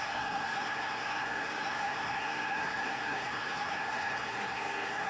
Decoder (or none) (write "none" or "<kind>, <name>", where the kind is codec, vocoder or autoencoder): codec, SNAC